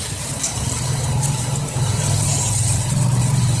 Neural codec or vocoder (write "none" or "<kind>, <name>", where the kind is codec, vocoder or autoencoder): none